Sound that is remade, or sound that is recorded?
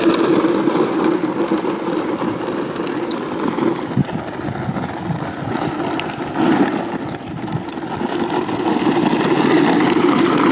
recorded